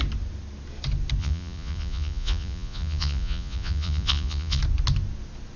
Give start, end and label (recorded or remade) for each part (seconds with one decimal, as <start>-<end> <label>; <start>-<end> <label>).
0.0-1.2 recorded; 1.2-4.6 remade; 4.6-5.6 recorded